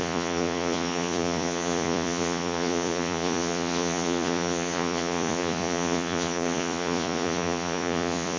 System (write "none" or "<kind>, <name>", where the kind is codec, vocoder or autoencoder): vocoder, Vocos